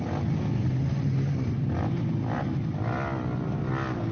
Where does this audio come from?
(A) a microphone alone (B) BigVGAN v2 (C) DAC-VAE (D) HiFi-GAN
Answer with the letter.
A